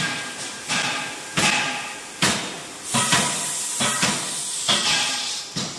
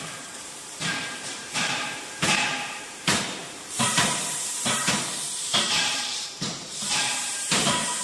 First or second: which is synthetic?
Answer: second